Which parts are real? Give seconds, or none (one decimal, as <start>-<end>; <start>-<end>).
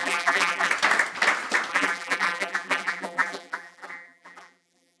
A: 0.7-1.7